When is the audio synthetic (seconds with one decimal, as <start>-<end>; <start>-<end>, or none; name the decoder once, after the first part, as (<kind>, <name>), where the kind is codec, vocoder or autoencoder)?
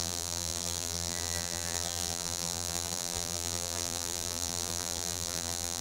0.0-5.8 (vocoder, BigVGAN v2)